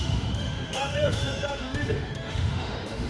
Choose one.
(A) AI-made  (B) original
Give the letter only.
A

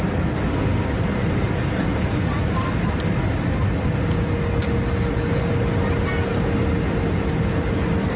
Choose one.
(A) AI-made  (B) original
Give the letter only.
B